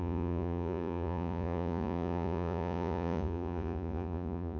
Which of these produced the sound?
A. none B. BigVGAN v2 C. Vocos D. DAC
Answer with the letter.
C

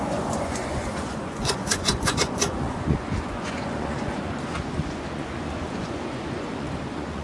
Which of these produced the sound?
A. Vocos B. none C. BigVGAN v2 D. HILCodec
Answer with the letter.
A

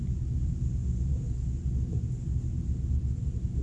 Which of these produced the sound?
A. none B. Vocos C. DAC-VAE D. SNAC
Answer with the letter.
A